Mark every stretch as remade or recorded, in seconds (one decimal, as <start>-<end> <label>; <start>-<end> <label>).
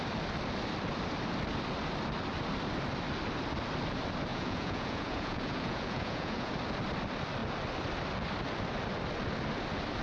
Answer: 0.0-4.3 recorded; 4.3-6.5 remade; 6.5-10.0 recorded